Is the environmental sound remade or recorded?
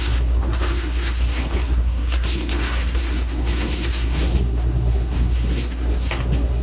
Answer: remade